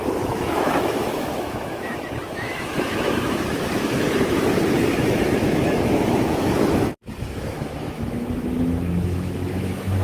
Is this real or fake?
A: fake